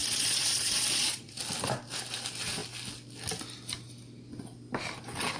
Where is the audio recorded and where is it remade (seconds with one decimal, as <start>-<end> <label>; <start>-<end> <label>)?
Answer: 0.0-1.4 remade; 1.4-5.4 recorded